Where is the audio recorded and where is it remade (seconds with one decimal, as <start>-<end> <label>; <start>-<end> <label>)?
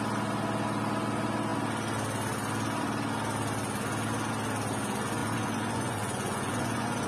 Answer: 0.0-5.2 recorded; 5.2-7.1 remade